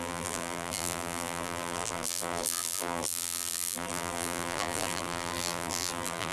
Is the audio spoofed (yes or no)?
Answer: yes